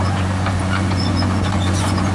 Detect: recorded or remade remade